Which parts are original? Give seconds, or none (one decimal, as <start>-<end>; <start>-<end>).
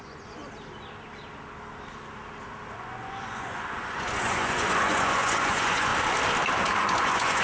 0.4-2.7; 5.9-6.8